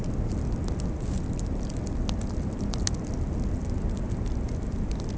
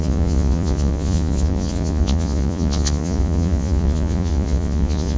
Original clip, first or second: first